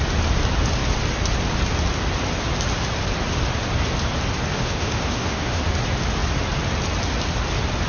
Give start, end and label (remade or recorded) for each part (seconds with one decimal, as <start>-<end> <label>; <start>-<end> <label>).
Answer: 0.0-4.5 recorded; 4.5-5.6 remade; 5.6-7.9 recorded